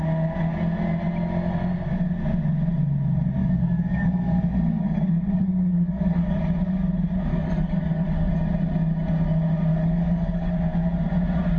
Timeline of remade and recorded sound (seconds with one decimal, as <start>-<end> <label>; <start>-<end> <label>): 0.0-3.4 recorded; 3.4-6.4 remade; 6.4-7.3 recorded; 7.3-8.3 remade; 8.3-9.7 recorded; 9.7-10.5 remade; 10.5-11.6 recorded